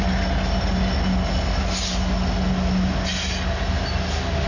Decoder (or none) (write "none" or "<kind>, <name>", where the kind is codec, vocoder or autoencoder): none